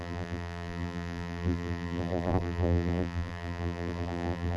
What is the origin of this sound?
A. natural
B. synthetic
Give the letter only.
B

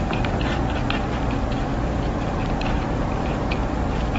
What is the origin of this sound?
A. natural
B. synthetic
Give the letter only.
A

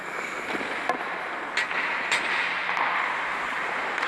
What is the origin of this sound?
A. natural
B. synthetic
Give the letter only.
A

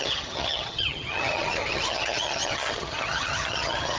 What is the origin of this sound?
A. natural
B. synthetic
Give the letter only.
B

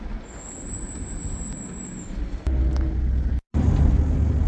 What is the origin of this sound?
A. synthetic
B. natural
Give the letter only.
B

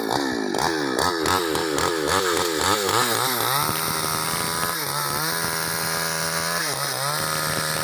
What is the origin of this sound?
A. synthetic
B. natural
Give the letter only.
B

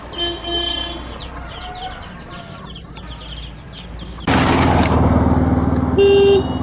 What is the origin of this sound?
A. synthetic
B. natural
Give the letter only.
B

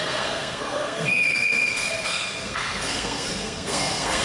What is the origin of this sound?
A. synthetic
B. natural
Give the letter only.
A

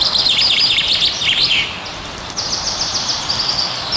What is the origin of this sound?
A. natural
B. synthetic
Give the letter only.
A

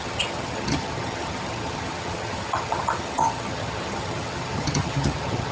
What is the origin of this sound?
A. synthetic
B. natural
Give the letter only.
A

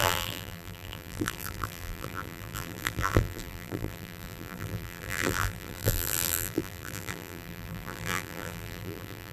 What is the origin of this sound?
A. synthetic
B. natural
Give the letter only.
A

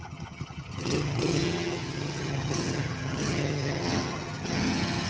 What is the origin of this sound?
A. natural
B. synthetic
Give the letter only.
B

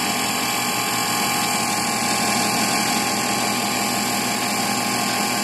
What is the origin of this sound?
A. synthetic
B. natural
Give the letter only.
B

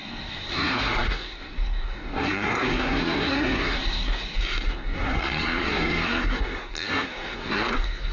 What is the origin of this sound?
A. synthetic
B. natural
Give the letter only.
A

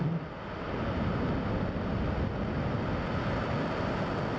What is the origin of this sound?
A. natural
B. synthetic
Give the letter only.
A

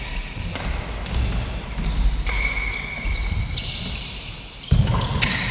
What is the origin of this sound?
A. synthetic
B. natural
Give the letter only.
B